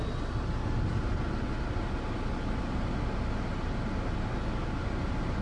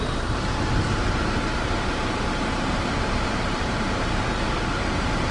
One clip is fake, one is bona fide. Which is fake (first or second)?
second